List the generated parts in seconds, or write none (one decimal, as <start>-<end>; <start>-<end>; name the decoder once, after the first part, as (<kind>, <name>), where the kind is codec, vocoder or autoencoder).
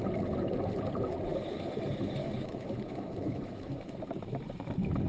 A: 2.2-4.0 (autoencoder, DAC-VAE)